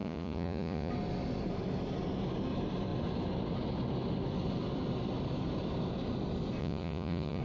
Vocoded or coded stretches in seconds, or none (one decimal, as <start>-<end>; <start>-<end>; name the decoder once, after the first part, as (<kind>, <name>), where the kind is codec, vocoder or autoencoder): 0.0-0.9 (vocoder, Vocos); 6.6-7.4